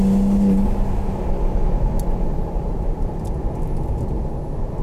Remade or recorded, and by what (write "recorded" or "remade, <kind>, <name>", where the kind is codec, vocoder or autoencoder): recorded